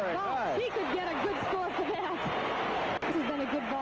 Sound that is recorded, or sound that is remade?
recorded